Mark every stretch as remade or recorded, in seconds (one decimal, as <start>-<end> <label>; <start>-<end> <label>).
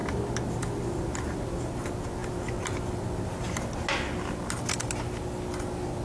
0.0-6.0 recorded